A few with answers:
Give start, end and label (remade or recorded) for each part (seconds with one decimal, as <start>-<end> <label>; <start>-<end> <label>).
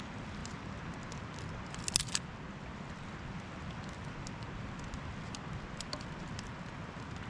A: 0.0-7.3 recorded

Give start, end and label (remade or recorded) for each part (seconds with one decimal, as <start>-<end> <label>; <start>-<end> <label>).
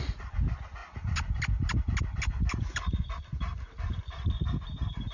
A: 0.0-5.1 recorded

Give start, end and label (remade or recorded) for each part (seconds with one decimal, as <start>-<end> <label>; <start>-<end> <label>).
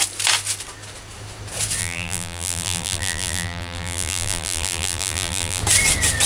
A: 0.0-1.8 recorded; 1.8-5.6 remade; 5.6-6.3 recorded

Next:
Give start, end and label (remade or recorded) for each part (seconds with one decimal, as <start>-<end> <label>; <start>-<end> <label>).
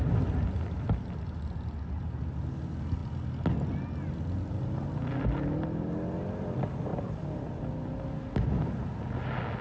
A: 0.0-6.9 recorded; 6.9-7.6 remade; 7.6-9.6 recorded